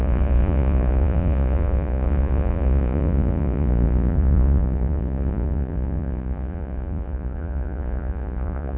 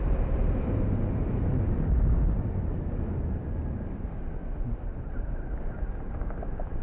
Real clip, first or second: second